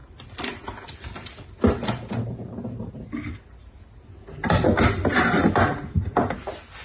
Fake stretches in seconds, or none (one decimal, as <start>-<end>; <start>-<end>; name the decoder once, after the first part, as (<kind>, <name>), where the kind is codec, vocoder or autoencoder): 0.0-2.9 (vocoder, BigVGAN v2)